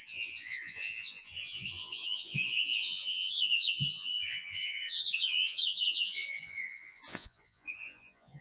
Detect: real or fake fake